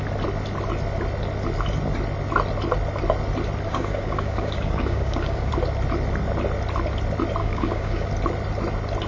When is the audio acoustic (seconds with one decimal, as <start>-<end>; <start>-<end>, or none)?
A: 0.0-3.7; 5.5-7.4; 8.1-9.1

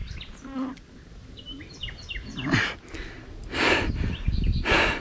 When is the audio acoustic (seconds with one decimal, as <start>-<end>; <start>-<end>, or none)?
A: 0.0-5.0

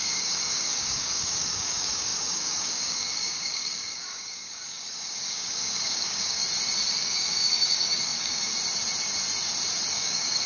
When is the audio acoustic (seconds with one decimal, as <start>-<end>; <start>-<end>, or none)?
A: 6.4-6.9; 8.5-9.9

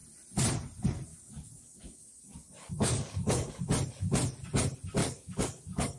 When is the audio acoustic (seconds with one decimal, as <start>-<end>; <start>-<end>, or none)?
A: 0.0-1.1; 3.6-5.0

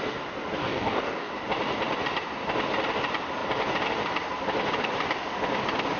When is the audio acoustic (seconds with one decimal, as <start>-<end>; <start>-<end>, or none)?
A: 0.0-0.6; 1.3-6.0

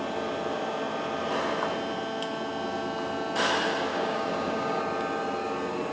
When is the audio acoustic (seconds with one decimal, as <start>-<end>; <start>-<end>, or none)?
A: 0.0-3.9; 4.8-5.9

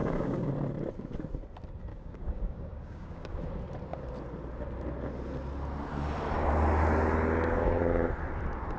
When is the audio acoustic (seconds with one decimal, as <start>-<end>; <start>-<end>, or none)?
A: 0.5-1.9; 3.4-8.8

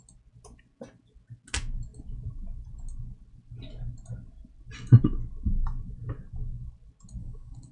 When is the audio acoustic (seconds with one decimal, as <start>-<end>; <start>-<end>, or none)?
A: 0.0-7.2